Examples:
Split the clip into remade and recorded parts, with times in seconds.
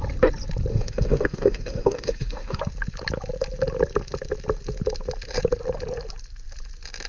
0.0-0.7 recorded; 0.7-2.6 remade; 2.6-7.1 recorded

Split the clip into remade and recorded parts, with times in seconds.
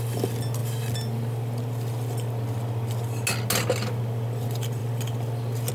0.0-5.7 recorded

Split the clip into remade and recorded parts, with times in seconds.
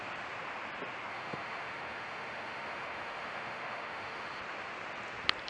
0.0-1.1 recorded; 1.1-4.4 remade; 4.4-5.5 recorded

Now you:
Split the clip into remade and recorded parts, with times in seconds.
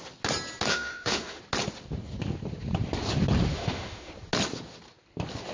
0.0-0.7 recorded; 0.7-1.4 remade; 1.4-3.5 recorded; 3.5-4.1 remade; 4.1-5.5 recorded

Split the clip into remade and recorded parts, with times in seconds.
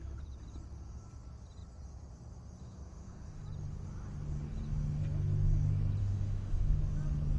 0.0-2.6 recorded; 2.6-3.4 remade; 3.4-6.0 recorded; 6.0-6.8 remade; 6.8-7.4 recorded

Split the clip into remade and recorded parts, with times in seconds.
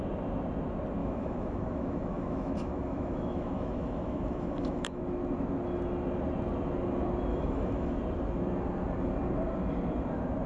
0.0-1.0 recorded; 1.0-5.0 remade; 5.0-7.3 recorded; 7.3-8.0 remade; 8.0-10.5 recorded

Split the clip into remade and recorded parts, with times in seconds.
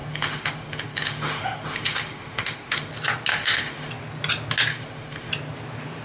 0.0-2.9 remade; 2.9-3.3 recorded; 3.3-3.9 remade; 3.9-4.7 recorded; 4.7-5.3 remade; 5.3-6.0 recorded